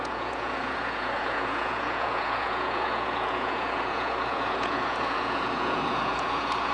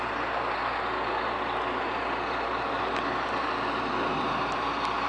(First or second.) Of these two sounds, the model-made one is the first